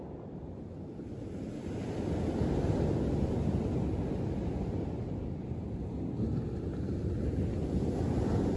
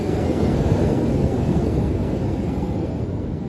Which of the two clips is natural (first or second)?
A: first